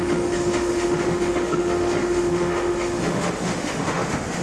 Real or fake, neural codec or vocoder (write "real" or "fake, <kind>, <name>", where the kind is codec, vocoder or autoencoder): fake, autoencoder, DAC-VAE